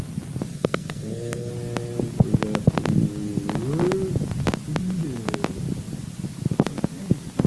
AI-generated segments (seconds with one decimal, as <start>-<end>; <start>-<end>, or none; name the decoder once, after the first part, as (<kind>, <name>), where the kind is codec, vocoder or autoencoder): 0.5-1.5 (codec, SNAC)